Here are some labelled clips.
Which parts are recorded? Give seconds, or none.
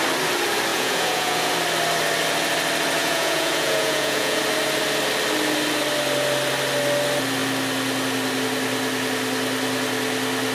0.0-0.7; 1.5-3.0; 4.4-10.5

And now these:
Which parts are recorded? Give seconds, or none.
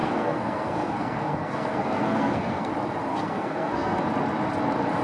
2.7-3.1; 4.0-5.0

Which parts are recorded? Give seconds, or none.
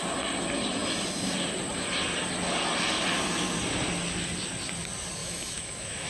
0.0-5.2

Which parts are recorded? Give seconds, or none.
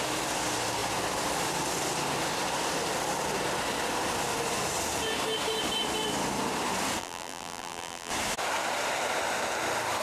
0.0-7.0; 8.1-10.0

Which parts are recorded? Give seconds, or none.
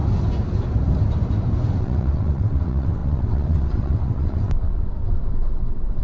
0.0-1.8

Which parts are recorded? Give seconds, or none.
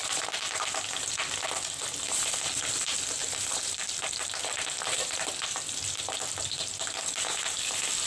0.5-3.2; 5.3-8.1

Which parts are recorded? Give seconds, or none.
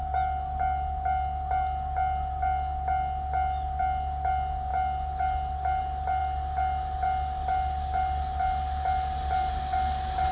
0.0-10.3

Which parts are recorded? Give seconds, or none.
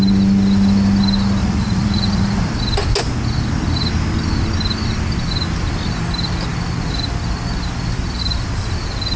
0.0-1.4; 2.4-9.2